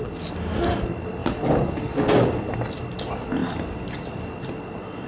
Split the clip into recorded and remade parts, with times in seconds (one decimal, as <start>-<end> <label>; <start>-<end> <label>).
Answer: 0.0-5.1 recorded